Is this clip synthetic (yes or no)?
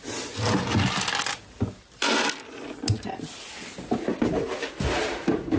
no